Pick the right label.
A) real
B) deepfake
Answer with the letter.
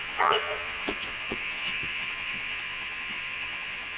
B